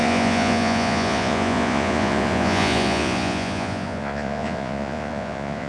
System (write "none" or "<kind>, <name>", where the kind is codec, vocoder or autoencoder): vocoder, Vocos